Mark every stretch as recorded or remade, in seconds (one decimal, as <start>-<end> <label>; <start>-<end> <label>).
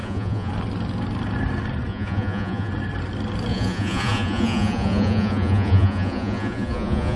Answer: 0.0-0.5 remade; 0.5-1.9 recorded; 1.9-2.7 remade; 2.7-3.5 recorded; 3.5-7.2 remade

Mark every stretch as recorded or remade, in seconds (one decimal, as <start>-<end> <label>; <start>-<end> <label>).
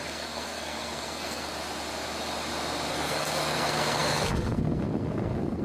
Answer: 0.0-1.5 remade; 1.5-2.9 recorded; 2.9-5.6 remade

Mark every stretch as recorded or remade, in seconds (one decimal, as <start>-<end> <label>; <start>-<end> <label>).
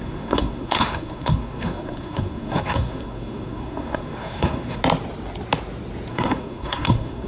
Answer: 0.0-4.8 remade; 4.8-6.1 recorded; 6.1-7.3 remade